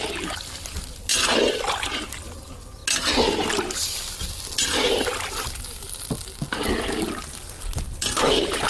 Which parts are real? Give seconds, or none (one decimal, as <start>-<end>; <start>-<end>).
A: 0.0-8.7